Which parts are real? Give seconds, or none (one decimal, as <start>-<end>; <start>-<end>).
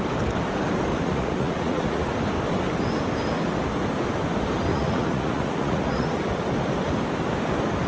0.0-0.9; 2.1-4.7; 6.2-7.9